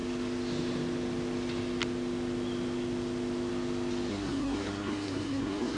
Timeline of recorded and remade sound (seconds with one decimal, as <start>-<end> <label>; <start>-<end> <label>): 0.0-4.1 recorded; 4.1-5.8 remade